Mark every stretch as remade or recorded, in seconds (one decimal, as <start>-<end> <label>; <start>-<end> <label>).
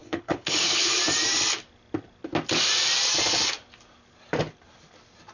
0.0-0.9 remade; 0.9-5.3 recorded